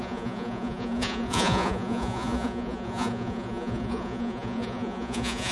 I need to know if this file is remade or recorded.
remade